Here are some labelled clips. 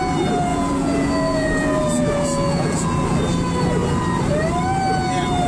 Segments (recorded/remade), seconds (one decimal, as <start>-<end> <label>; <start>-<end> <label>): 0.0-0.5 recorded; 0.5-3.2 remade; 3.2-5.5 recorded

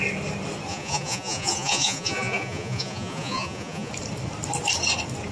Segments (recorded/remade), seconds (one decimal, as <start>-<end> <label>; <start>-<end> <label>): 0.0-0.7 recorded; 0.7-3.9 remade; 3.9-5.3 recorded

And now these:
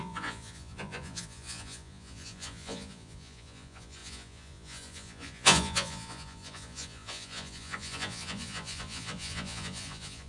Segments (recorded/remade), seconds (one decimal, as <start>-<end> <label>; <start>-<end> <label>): 0.0-10.3 remade

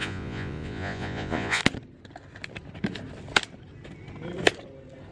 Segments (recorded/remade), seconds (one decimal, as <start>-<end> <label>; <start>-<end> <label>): 0.0-1.6 remade; 1.6-5.1 recorded

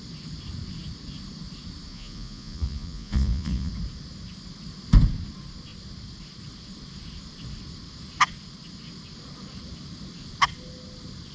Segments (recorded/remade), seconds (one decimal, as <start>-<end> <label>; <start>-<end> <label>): 0.0-1.9 recorded; 1.9-3.7 remade; 3.7-11.3 recorded

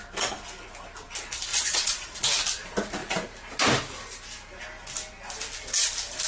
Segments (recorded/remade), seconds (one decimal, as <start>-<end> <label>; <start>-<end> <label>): 0.0-1.5 recorded; 1.5-2.2 remade; 2.2-6.3 recorded